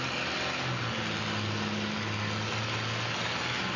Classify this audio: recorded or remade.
recorded